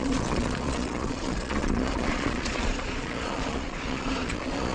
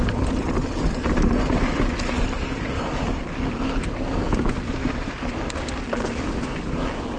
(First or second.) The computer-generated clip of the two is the first